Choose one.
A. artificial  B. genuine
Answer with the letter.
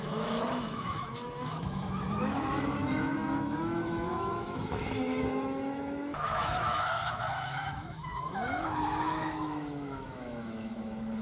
A